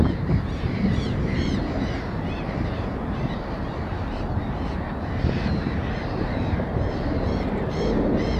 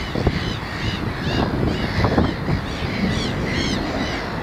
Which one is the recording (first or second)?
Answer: second